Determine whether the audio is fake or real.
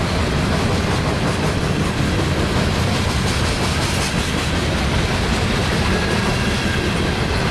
real